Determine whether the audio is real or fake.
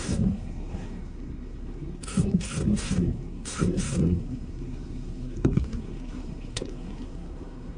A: fake